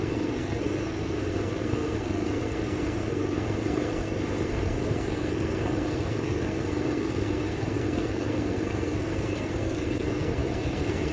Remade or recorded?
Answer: remade